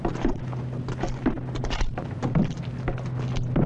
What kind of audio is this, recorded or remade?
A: recorded